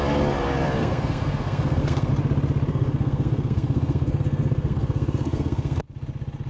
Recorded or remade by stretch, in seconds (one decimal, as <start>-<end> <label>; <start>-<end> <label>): 0.0-0.8 recorded; 0.8-2.1 remade; 2.1-2.7 recorded; 2.7-5.8 remade; 5.8-6.5 recorded